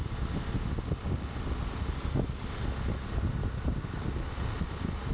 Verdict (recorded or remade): recorded